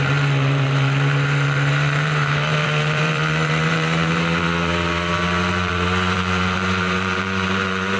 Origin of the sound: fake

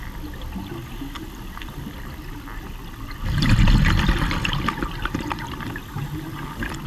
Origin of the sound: real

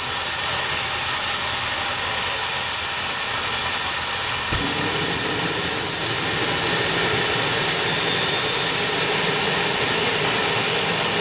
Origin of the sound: real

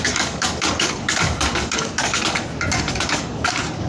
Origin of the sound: fake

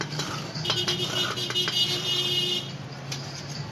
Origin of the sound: real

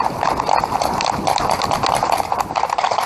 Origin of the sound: real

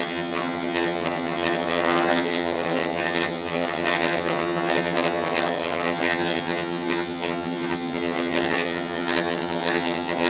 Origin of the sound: fake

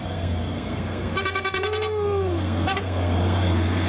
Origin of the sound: fake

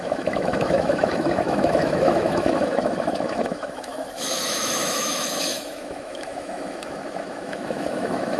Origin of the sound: fake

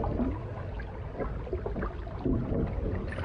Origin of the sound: real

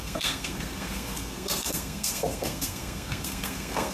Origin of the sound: fake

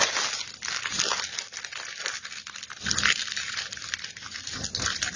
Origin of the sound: real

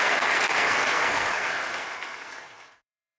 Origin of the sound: fake